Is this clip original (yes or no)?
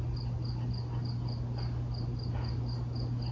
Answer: yes